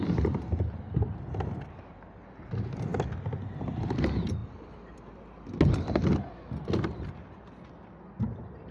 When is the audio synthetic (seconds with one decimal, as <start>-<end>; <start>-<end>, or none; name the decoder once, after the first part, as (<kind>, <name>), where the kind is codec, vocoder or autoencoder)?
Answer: none